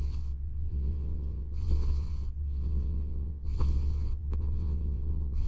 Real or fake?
fake